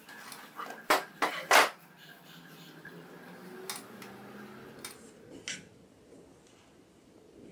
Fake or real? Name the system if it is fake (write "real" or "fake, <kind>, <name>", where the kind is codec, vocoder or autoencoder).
real